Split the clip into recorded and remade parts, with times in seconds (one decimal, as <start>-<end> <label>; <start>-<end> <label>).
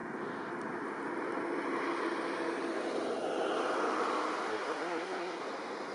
0.0-4.5 recorded; 4.5-5.4 remade; 5.4-5.9 recorded